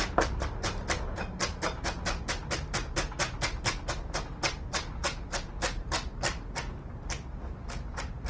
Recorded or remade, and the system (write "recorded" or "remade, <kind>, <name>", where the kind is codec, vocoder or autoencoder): recorded